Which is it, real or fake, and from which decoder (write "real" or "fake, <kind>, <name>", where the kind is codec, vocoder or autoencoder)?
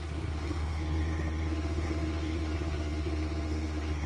fake, codec, SNAC